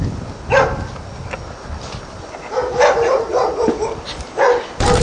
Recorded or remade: recorded